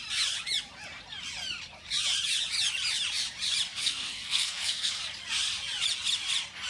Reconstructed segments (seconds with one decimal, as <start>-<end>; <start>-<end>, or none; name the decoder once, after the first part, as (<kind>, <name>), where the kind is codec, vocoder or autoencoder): 3.7-5.0 (codec, SNAC)